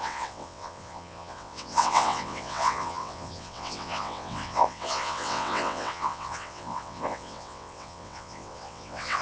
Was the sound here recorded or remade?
remade